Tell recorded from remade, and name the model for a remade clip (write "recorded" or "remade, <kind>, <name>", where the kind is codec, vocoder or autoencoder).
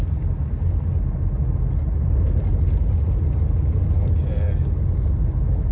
recorded